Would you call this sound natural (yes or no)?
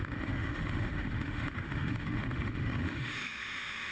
no